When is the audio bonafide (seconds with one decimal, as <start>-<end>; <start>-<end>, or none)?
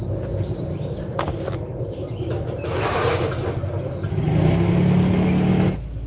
0.0-6.1